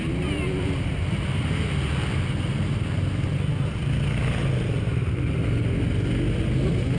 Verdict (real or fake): real